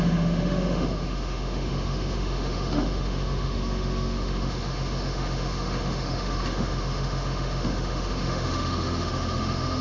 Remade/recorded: remade